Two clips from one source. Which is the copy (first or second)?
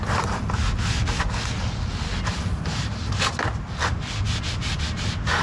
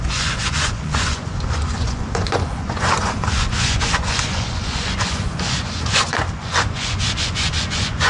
second